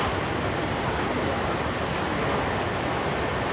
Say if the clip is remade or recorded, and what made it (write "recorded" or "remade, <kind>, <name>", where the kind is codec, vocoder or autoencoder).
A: recorded